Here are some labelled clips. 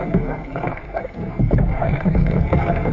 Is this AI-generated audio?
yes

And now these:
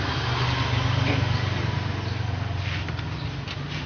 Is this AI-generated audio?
no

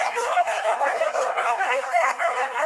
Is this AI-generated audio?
yes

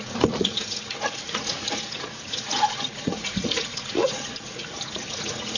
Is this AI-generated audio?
yes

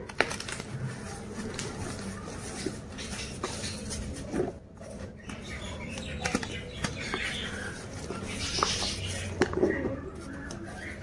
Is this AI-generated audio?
no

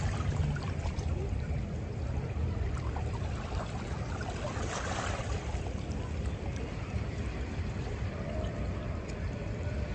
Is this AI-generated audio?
yes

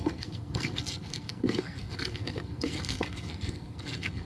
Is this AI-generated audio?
yes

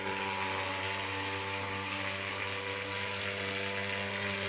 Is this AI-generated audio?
no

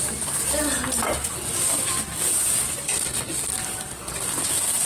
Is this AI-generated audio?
no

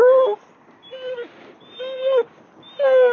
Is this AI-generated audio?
no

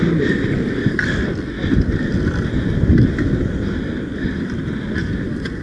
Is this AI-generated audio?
no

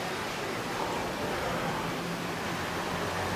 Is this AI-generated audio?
no